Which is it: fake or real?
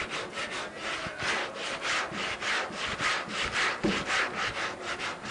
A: real